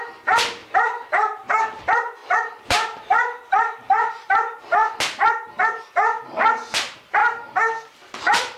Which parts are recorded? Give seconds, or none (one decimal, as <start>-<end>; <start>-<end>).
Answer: 0.0-0.6; 1.6-7.2